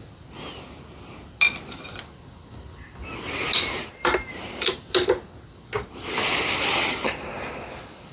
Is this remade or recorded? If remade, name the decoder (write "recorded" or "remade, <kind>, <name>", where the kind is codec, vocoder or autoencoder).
recorded